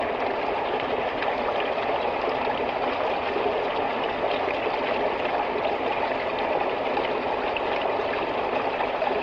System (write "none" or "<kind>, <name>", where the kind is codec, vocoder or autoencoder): none